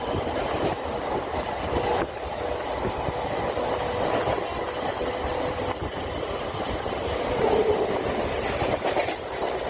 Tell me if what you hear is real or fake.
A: real